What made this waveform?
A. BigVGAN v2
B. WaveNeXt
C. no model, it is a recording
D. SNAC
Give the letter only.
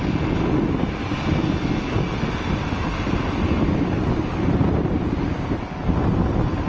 C